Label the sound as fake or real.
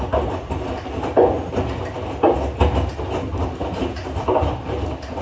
real